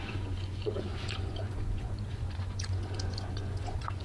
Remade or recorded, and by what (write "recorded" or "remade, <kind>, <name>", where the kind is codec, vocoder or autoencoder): remade, vocoder, Vocos